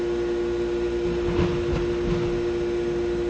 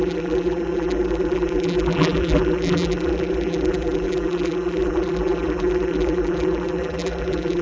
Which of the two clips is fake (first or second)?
second